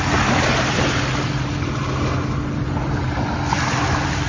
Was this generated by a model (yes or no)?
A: no